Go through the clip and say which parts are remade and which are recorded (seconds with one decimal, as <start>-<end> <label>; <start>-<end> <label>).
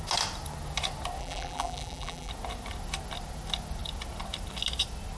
0.0-1.2 recorded; 1.2-2.3 remade; 2.3-5.2 recorded